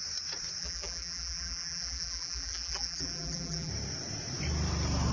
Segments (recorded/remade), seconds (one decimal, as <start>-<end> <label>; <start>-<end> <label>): 0.0-0.6 recorded; 0.6-3.7 remade; 3.7-5.1 recorded